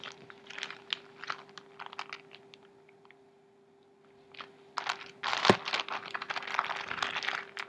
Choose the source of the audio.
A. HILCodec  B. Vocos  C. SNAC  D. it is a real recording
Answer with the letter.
D